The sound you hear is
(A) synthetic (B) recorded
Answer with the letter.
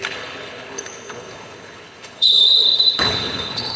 A